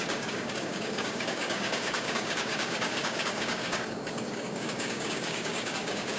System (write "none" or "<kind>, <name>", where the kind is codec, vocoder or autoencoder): codec, DAC